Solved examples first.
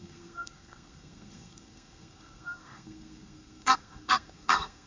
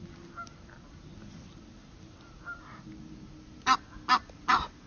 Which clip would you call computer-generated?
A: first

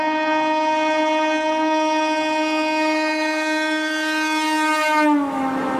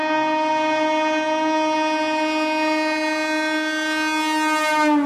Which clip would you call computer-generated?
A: first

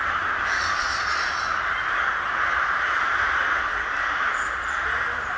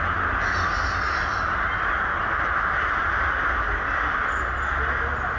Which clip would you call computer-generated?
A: first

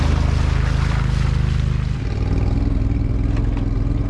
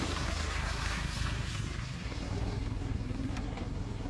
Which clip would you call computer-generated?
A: second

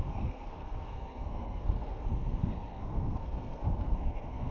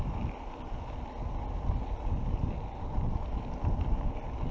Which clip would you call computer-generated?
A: first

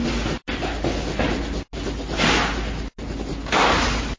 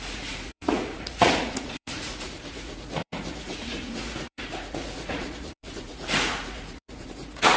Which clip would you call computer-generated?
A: second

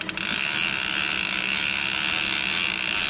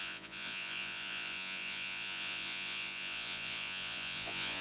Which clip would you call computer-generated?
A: second